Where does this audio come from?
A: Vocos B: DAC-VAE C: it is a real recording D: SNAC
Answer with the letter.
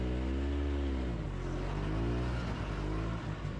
C